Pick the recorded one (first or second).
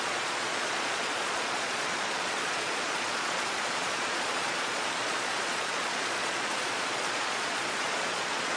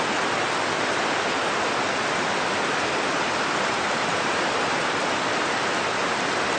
second